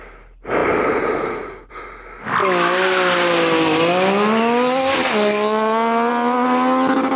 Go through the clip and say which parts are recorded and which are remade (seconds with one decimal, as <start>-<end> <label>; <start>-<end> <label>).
0.0-7.2 recorded